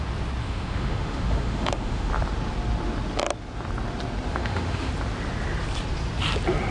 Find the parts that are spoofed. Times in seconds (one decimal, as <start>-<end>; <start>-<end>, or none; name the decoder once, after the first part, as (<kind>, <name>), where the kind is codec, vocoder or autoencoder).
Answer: 0.4-2.1 (autoencoder, DAC-VAE); 4.3-4.9